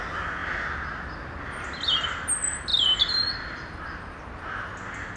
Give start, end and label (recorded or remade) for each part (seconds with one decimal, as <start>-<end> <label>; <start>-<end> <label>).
0.0-2.7 recorded; 2.7-3.8 remade; 3.8-5.2 recorded